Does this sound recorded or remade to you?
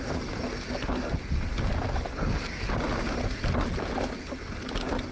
recorded